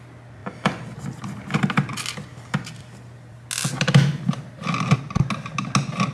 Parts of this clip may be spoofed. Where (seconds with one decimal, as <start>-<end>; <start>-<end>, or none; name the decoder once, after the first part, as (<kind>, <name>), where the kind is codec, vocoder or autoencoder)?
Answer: none